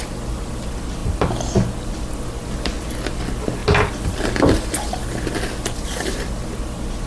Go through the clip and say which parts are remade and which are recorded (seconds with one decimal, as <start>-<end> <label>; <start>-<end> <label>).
0.0-7.1 recorded